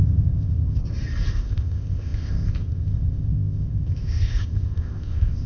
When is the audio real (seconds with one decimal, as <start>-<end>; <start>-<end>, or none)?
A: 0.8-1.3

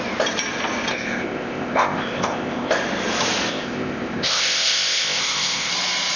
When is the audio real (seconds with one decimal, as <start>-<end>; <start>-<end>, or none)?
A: 0.0-0.9; 2.7-3.5; 5.7-6.2

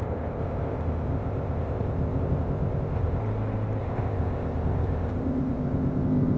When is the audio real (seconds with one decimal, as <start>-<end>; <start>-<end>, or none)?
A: 3.2-3.8